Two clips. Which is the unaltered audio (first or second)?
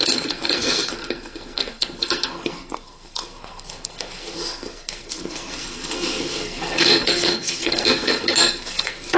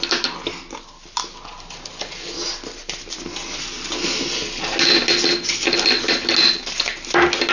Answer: second